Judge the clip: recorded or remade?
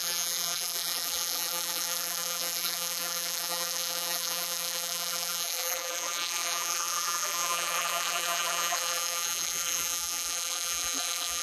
remade